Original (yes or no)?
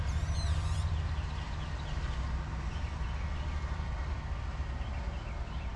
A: yes